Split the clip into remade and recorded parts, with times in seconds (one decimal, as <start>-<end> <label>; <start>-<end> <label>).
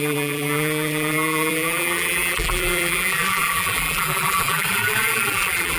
0.0-5.8 remade